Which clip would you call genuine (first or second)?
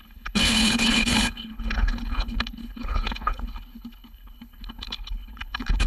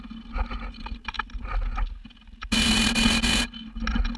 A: second